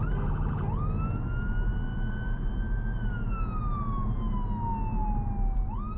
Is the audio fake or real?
real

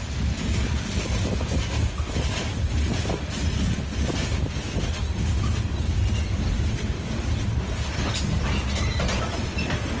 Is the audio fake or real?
real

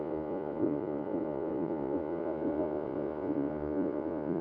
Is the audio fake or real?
fake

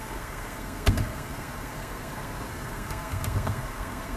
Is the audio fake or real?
fake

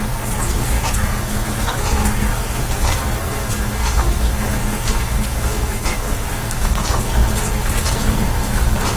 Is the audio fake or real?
fake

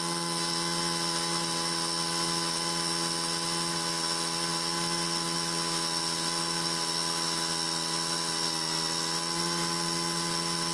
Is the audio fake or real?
real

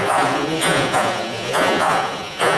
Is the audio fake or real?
fake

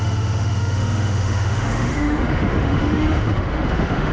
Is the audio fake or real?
fake